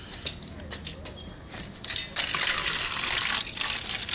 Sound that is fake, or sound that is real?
real